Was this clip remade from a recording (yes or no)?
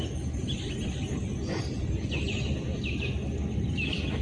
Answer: no